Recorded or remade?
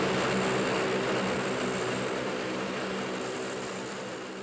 recorded